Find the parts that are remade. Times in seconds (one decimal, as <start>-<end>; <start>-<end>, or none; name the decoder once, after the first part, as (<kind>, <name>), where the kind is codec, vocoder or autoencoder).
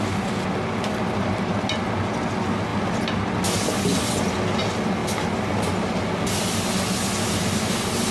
0.9-1.5 (vocoder, BigVGAN v2)